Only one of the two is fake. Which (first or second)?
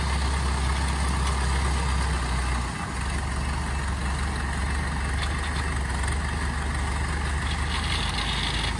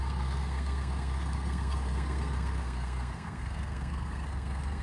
second